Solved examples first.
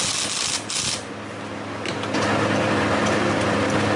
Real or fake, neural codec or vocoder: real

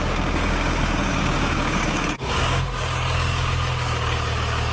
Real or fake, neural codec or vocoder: fake, codec, DAC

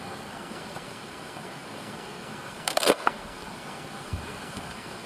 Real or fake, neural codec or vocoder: fake, codec, SNAC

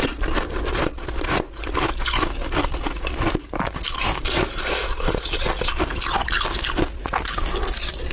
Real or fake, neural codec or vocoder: real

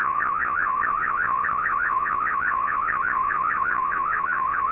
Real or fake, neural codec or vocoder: fake, vocoder, Vocos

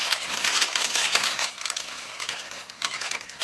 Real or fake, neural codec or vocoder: fake, codec, SNAC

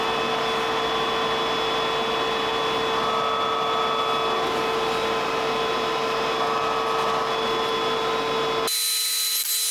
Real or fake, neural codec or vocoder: real